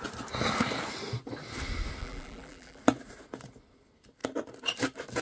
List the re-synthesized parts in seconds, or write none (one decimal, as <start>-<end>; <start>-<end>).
2.0-2.8